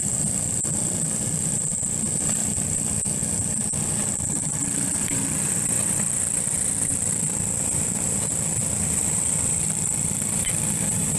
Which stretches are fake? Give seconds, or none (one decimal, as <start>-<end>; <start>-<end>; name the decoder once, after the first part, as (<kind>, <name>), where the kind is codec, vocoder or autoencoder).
4.6-8.2 (vocoder, BigVGAN v2); 9.0-11.2